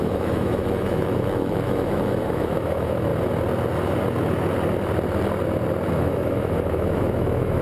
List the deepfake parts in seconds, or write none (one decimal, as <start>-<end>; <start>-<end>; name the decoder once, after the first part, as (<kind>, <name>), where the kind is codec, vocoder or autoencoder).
0.0-3.1 (autoencoder, DAC-VAE); 5.9-7.6